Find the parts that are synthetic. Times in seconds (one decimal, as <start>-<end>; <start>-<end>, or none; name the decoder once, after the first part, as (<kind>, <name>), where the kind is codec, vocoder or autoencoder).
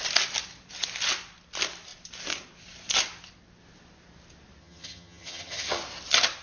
4.6-5.8 (vocoder, HiFi-GAN)